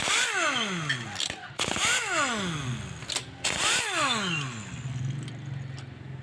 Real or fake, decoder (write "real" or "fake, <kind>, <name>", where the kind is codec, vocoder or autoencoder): real